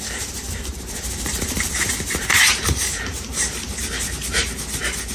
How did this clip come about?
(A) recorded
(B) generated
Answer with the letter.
B